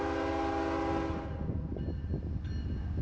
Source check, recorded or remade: recorded